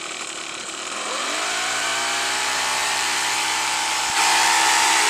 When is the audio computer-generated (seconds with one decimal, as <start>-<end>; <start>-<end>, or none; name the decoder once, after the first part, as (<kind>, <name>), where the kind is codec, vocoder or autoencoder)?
0.0-1.9 (vocoder, BigVGAN v2); 2.4-5.1

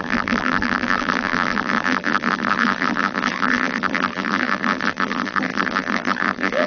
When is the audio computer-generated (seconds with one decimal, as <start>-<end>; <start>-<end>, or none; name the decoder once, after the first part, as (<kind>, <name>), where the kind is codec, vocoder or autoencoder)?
0.0-6.7 (vocoder, BigVGAN v2)

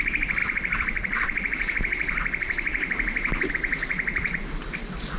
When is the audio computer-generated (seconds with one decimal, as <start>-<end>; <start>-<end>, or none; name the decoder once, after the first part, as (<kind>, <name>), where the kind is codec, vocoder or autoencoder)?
0.0-5.2 (vocoder, BigVGAN v2)